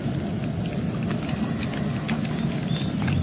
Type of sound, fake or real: real